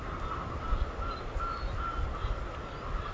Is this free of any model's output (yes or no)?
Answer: yes